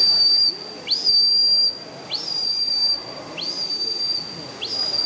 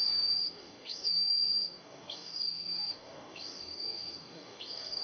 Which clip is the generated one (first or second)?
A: second